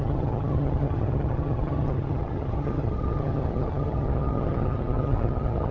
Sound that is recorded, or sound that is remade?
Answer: remade